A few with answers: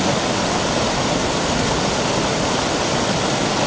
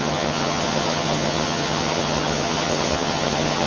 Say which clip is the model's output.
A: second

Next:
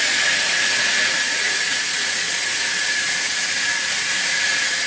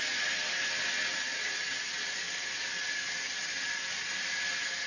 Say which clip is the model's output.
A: first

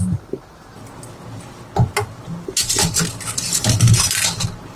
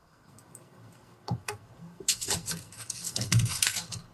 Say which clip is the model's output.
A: second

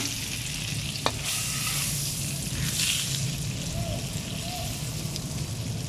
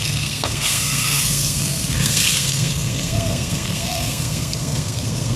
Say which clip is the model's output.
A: second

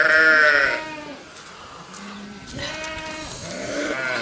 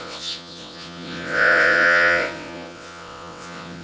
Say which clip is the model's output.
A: second